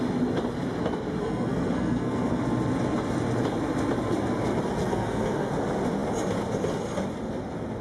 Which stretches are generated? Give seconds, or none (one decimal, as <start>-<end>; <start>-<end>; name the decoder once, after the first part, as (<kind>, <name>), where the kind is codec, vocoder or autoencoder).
1.2-2.4 (codec, SNAC); 4.8-5.5